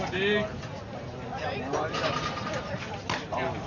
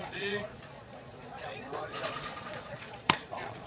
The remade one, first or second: second